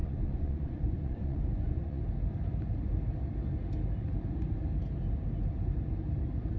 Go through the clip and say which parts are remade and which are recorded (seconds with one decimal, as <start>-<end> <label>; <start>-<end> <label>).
0.0-2.0 remade; 2.0-6.6 recorded